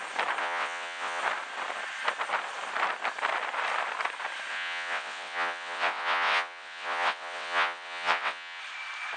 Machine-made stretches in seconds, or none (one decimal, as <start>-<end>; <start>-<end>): 0.4-1.2; 4.5-8.6